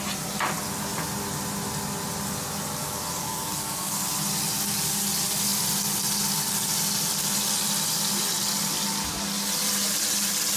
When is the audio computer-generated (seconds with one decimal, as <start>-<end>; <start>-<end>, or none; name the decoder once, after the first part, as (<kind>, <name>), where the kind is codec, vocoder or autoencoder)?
2.8-4.1 (codec, DAC)